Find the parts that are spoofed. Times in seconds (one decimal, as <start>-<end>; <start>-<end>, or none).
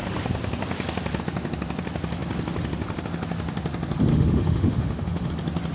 4.1-5.3